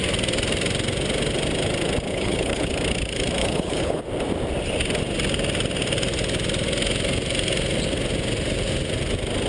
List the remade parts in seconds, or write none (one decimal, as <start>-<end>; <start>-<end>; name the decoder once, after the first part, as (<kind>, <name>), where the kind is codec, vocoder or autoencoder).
2.1-2.7 (codec, HILCodec); 3.4-4.0